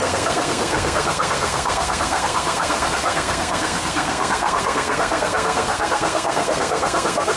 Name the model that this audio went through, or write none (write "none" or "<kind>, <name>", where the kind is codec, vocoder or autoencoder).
codec, SNAC